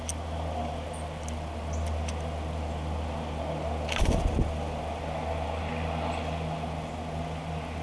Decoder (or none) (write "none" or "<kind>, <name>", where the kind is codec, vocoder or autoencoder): none